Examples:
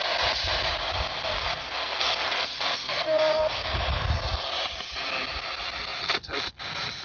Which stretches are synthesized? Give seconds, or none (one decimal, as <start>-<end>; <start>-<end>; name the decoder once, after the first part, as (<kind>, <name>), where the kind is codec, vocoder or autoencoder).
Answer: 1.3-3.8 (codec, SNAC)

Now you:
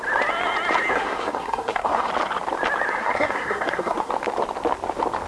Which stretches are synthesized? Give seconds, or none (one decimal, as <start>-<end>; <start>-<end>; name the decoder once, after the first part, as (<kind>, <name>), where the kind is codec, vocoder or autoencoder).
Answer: 0.9-2.1 (codec, SNAC); 3.0-4.1

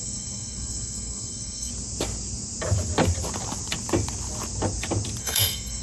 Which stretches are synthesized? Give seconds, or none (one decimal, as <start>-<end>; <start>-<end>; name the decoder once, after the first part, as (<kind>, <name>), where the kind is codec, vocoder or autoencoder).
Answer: 0.0-1.7 (codec, SNAC); 5.2-5.8